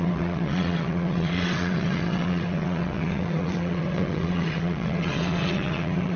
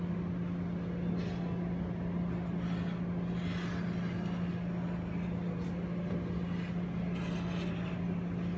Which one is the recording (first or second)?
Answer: second